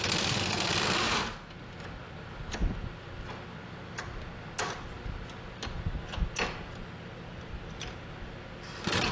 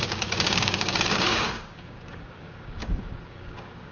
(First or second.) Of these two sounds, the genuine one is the first